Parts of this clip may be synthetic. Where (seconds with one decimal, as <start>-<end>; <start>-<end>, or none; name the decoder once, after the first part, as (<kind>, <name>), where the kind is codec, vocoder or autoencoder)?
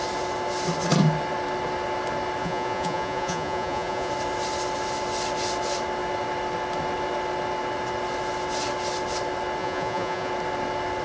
2.4-4.1 (vocoder, Vocos); 9.6-10.3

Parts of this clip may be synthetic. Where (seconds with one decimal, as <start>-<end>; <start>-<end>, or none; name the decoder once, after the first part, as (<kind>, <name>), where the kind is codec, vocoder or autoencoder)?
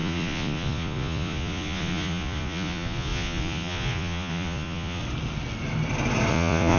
0.0-5.0 (vocoder, Vocos); 6.3-6.8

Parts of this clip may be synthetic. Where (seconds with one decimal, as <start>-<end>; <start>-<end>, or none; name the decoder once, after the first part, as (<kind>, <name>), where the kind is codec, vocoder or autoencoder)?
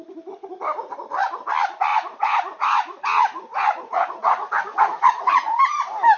1.9-5.6 (vocoder, Vocos)